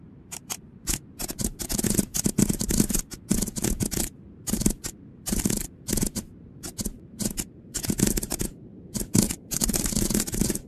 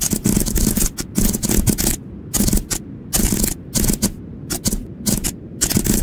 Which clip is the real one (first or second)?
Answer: second